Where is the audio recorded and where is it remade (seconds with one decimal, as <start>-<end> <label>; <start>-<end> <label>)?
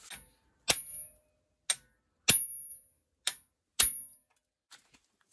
0.0-5.3 recorded